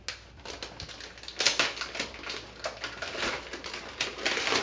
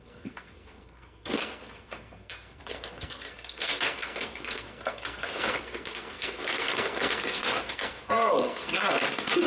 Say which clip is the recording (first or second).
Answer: first